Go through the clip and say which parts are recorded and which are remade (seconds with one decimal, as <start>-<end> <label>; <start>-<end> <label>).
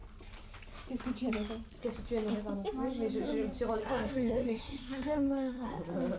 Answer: 0.0-3.8 recorded; 3.8-5.7 remade; 5.7-6.2 recorded